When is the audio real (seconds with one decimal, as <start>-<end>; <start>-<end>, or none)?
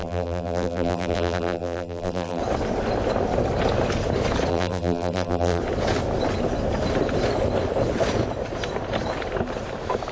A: 2.4-4.5; 5.6-10.1